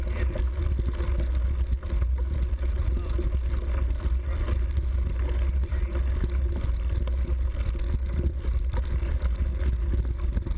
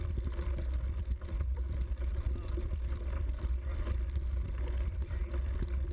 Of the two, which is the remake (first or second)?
second